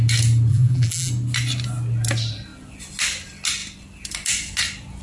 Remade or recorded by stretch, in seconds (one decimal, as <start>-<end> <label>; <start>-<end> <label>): 0.0-0.5 recorded; 0.5-1.1 remade; 1.1-5.0 recorded

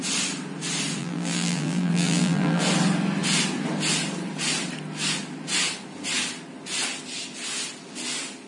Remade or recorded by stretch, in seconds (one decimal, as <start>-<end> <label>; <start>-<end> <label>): 0.0-1.0 recorded; 1.0-2.6 remade; 2.6-8.5 recorded

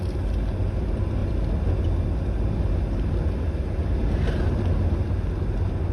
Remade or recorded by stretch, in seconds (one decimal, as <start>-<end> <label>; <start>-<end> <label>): 0.0-5.9 recorded